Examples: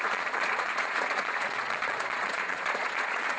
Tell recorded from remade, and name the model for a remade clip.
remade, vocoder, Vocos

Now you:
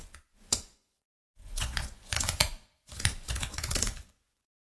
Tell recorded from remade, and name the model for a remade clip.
remade, vocoder, Vocos